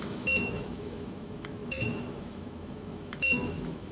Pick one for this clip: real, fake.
fake